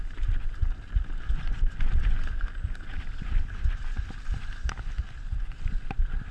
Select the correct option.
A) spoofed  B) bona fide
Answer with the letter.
B